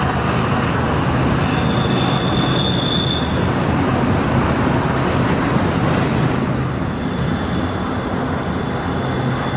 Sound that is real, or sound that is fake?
real